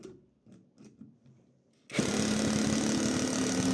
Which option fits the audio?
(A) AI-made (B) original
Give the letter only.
B